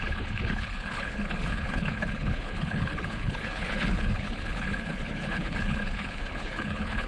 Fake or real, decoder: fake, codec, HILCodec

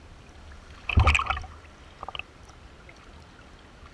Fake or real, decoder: real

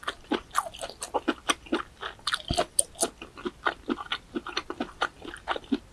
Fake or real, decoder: real